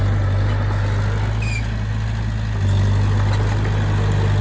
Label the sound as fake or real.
real